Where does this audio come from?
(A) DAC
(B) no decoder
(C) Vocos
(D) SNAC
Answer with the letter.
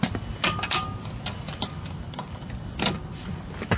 B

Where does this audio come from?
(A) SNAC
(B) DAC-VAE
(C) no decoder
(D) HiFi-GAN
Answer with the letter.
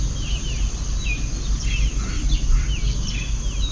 C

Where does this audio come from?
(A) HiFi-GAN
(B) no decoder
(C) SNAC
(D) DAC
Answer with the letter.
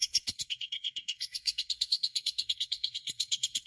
C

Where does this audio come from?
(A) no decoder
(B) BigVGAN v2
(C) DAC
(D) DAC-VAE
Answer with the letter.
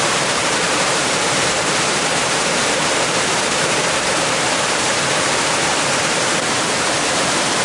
B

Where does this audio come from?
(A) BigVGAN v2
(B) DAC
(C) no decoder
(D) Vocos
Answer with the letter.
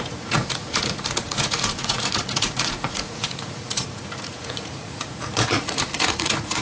D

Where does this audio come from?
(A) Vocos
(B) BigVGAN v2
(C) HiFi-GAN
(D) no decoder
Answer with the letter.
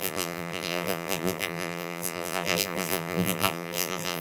B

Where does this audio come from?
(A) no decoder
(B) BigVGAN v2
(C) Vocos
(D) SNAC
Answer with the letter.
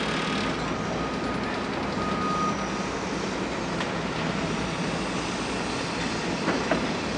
A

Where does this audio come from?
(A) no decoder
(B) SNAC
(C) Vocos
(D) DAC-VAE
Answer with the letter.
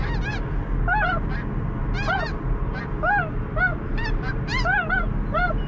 A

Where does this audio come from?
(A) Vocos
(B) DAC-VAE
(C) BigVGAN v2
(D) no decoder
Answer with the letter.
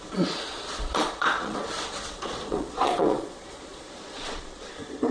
A